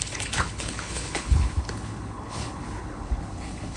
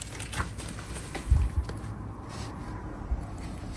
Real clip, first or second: second